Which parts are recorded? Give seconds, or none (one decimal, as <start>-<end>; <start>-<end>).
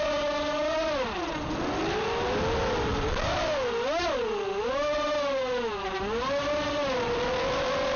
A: 0.0-8.0